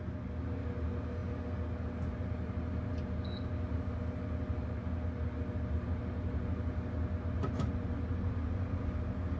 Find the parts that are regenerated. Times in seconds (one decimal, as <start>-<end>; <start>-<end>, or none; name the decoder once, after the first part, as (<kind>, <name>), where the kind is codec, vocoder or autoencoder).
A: none